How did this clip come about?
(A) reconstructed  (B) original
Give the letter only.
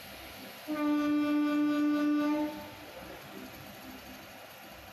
B